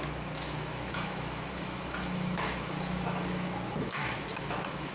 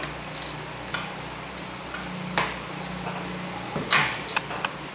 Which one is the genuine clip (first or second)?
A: second